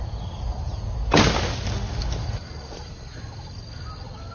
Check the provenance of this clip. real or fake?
real